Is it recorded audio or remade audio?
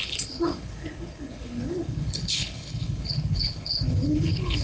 remade